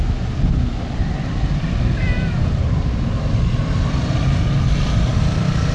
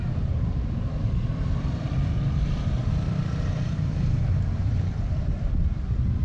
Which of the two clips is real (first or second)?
first